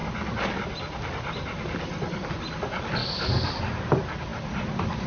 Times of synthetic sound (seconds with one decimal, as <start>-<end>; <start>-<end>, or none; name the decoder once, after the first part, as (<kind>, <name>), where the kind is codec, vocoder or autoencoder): none